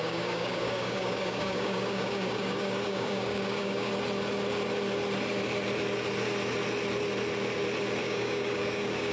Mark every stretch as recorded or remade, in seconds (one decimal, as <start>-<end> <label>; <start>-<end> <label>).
0.0-3.9 remade; 3.9-8.0 recorded; 8.0-9.1 remade